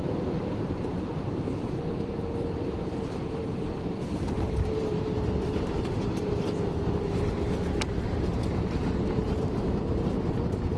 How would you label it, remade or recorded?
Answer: remade